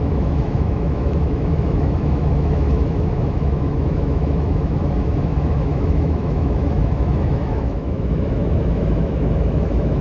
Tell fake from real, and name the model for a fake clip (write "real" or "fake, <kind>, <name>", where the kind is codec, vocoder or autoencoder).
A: fake, autoencoder, DAC-VAE